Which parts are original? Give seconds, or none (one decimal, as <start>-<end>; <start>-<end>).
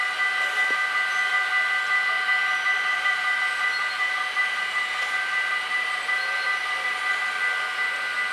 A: 0.0-2.9; 3.4-8.3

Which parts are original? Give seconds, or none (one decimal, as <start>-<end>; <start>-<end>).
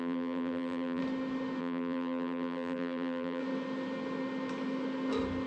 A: 1.0-1.6; 3.4-5.5